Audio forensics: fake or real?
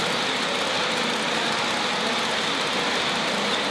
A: real